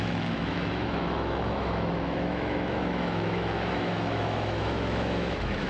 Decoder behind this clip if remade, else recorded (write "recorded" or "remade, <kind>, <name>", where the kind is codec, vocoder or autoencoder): remade, autoencoder, DAC-VAE